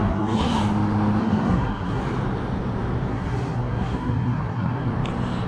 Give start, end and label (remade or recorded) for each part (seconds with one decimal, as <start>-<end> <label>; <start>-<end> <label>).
0.0-0.6 remade; 0.6-1.2 recorded; 1.2-2.0 remade; 2.0-3.1 recorded; 3.1-4.9 remade; 4.9-5.5 recorded